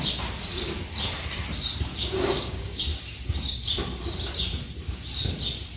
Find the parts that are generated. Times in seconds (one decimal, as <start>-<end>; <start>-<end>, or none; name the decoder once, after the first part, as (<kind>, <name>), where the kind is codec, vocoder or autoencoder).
1.9-2.8 (codec, DAC)